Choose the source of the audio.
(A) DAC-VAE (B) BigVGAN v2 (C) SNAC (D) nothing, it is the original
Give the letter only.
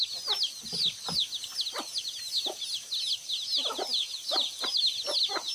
D